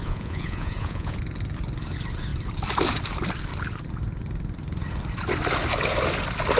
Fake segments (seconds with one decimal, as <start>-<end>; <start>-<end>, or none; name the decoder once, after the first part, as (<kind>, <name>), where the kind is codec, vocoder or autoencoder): 0.0-1.2 (vocoder, Vocos)